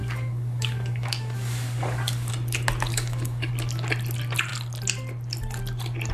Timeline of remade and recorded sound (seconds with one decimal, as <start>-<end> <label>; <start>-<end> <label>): 0.0-2.3 remade; 2.3-2.9 recorded; 2.9-3.5 remade; 3.5-6.1 recorded